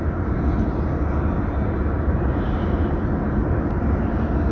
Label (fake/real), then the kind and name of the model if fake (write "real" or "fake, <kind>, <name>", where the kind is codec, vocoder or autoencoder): real